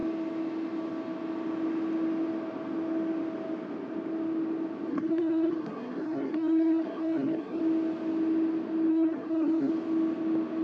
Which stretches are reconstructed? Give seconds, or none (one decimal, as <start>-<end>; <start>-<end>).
4.9-7.6; 8.9-9.7